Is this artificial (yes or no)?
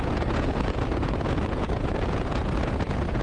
yes